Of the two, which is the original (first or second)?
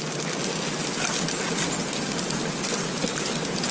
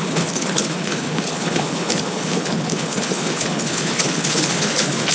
first